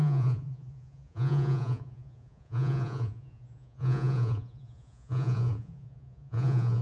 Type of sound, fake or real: fake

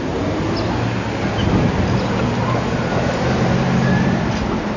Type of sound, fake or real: real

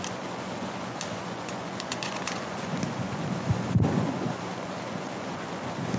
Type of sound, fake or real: fake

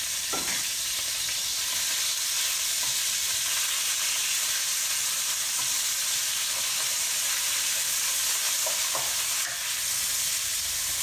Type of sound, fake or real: real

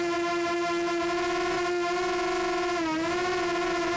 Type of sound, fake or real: real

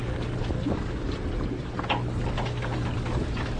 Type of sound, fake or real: real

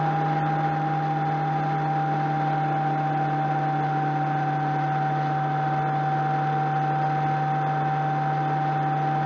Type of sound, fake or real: real